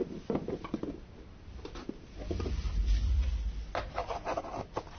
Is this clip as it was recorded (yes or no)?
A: yes